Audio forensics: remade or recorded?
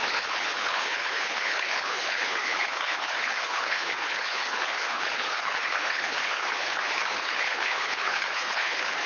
remade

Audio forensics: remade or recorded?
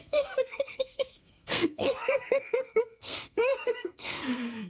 remade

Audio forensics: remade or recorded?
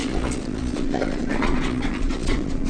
remade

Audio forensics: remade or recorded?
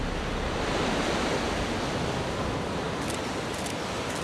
recorded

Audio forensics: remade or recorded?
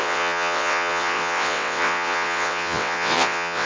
remade